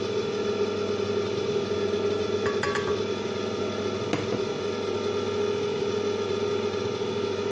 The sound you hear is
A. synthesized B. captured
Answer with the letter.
B